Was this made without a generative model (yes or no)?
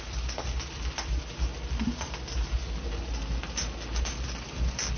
yes